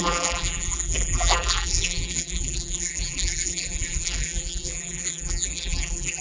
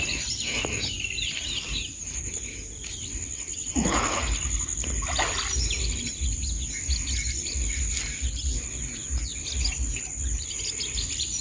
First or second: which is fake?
first